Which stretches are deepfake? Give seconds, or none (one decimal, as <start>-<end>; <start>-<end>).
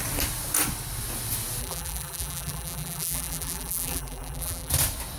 1.6-4.7